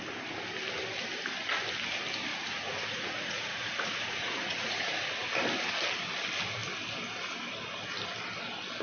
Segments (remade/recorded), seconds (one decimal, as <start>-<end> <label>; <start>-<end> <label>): 0.0-2.3 recorded; 2.3-5.3 remade; 5.3-8.8 recorded